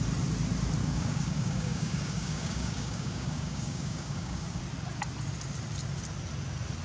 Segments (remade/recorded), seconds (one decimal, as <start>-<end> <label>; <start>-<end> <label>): 0.0-0.8 recorded; 0.8-4.6 remade; 4.6-6.8 recorded